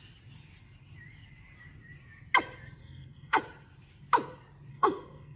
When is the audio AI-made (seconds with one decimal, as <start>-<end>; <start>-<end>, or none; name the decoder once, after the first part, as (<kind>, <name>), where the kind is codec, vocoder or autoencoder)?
2.8-3.4 (codec, SNAC); 4.7-5.4